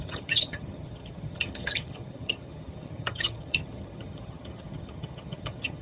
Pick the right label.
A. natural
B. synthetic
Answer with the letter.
B